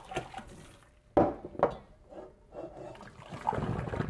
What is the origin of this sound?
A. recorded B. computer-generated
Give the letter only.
A